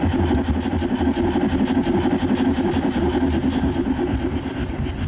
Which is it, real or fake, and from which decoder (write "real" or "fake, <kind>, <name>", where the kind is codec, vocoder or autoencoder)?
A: real